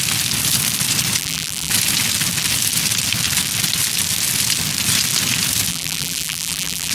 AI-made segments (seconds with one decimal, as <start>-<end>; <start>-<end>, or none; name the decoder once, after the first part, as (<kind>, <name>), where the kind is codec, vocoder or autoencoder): 1.2-1.7 (vocoder, BigVGAN v2); 5.7-6.9